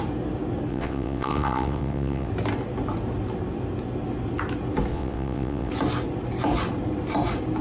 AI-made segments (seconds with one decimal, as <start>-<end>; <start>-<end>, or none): 0.7-2.3; 4.9-5.7